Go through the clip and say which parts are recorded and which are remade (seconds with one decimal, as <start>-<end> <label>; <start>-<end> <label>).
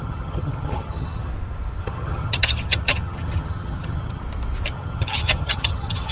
0.0-1.3 remade; 1.3-1.8 recorded; 1.8-4.2 remade; 4.2-4.7 recorded; 4.7-6.1 remade